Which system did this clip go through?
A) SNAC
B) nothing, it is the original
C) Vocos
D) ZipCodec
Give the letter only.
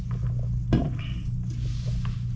B